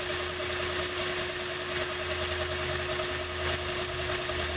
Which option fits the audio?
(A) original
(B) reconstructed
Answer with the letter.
A